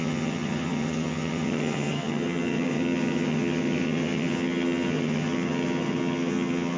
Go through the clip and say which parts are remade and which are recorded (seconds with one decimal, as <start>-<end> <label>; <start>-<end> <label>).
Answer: 0.0-6.8 remade